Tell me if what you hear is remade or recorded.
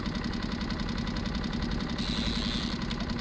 recorded